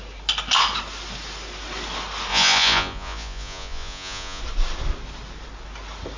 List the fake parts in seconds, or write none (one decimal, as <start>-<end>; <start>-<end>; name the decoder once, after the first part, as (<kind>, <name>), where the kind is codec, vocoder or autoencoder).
2.3-4.4 (vocoder, Vocos)